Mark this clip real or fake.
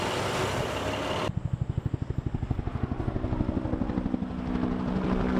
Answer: real